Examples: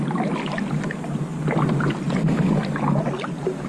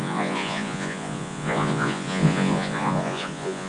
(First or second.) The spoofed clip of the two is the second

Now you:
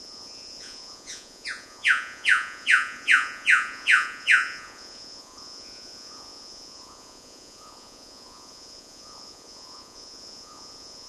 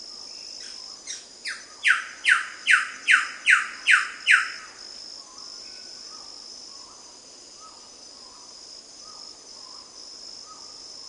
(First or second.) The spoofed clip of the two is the first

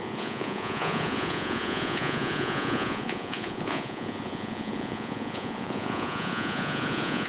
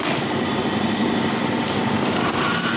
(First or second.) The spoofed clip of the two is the first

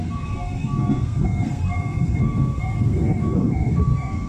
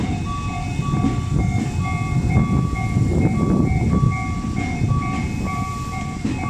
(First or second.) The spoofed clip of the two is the first